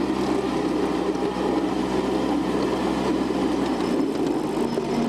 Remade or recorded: recorded